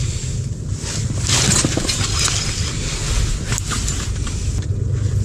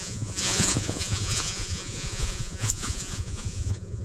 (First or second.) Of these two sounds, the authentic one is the first